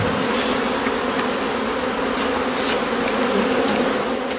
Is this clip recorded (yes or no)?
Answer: yes